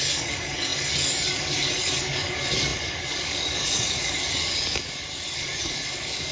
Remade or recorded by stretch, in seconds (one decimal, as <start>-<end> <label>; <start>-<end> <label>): 0.0-6.3 remade